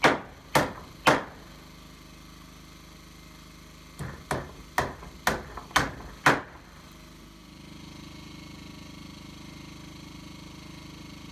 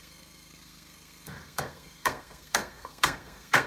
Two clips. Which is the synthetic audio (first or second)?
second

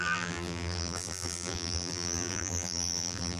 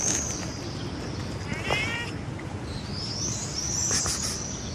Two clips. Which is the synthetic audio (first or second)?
first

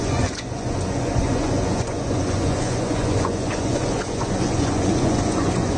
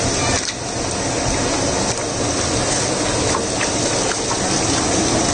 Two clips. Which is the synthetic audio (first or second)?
first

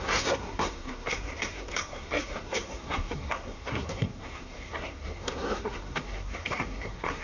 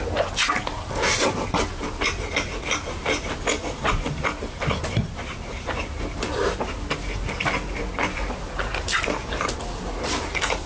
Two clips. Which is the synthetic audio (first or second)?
first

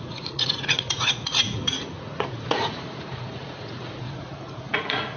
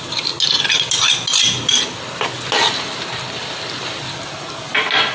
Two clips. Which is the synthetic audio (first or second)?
first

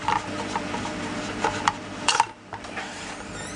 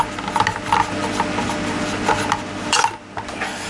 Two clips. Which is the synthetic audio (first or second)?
first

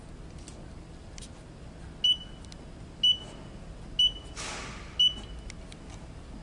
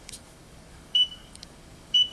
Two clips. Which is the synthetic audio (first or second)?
second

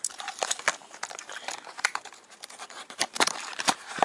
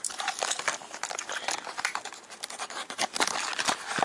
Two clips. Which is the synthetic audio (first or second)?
first